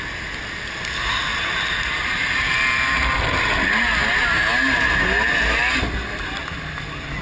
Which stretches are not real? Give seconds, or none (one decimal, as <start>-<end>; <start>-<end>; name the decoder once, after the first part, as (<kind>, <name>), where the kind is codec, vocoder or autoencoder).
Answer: 1.3-3.2 (vocoder, BigVGAN v2)